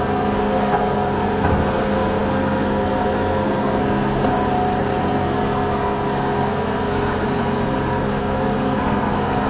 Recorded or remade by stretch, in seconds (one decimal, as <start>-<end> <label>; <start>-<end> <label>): 0.0-4.2 remade; 4.2-5.0 recorded; 5.0-9.5 remade